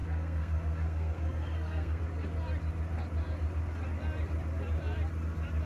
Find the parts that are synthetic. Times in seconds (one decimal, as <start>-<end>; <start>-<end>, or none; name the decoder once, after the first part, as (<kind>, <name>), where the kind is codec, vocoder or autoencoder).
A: 0.0-2.0 (codec, SNAC)